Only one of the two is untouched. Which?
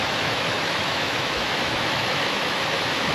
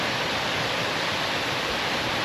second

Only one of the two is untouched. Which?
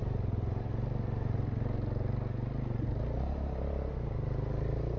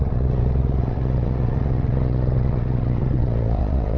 first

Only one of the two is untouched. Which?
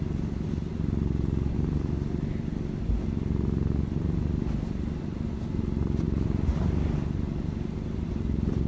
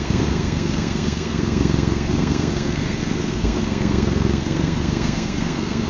first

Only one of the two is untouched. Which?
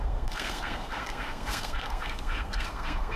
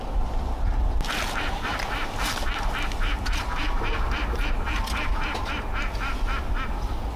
second